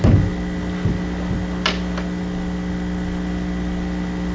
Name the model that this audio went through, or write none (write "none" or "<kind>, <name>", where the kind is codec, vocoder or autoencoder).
none